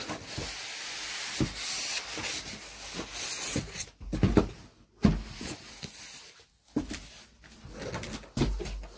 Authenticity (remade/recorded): recorded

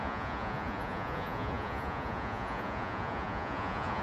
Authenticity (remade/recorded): remade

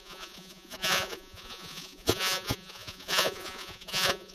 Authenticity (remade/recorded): remade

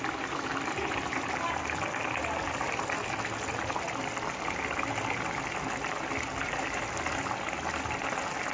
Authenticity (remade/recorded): recorded